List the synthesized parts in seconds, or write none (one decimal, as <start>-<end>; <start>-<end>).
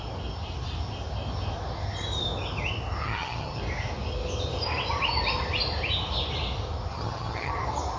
3.0-3.6; 6.9-7.5